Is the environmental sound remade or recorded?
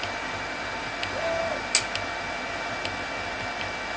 recorded